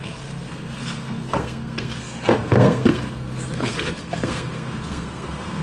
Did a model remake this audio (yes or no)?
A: yes